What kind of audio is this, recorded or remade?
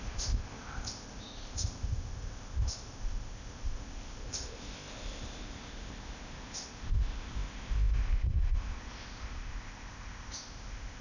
remade